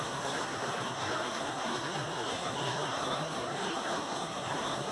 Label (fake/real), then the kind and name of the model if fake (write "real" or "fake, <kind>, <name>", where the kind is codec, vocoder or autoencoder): fake, codec, SNAC